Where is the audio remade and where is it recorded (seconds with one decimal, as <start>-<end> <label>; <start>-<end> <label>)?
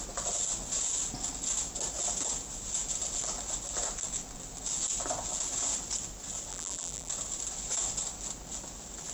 0.0-6.5 recorded; 6.5-7.1 remade; 7.1-9.1 recorded